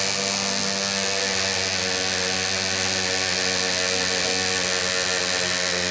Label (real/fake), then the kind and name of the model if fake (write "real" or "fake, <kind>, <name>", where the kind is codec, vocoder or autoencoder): real